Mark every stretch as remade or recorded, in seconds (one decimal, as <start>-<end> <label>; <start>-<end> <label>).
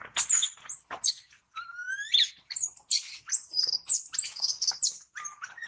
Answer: 0.0-5.7 recorded